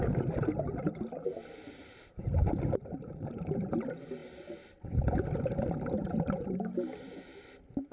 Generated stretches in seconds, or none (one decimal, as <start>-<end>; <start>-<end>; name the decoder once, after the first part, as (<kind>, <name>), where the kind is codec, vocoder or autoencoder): none